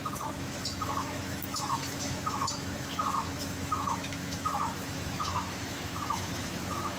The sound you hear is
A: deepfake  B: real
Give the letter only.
A